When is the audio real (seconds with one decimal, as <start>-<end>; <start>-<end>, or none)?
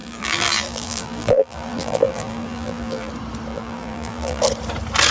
3.1-3.5; 4.4-5.1